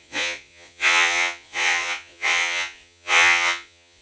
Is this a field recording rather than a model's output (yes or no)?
no